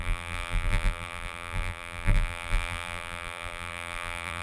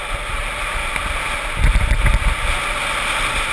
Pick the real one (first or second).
second